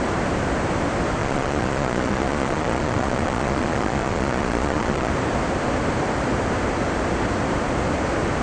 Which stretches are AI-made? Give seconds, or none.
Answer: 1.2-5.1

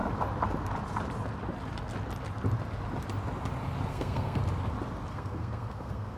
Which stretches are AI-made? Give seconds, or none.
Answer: 3.9-4.4; 5.1-6.2

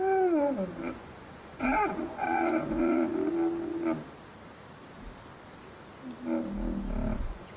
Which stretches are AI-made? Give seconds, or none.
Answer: 0.0-3.1; 7.1-7.6

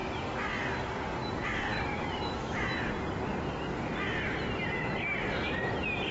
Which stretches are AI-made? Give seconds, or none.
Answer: 1.7-2.6

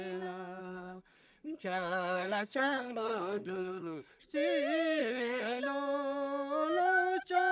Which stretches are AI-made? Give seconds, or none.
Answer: 0.6-4.2; 5.0-5.6

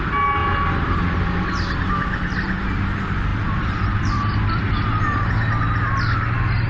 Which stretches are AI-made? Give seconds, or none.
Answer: 3.3-5.3

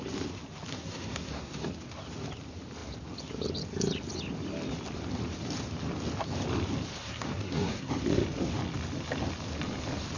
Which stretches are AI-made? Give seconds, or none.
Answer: 0.7-1.7; 7.0-7.9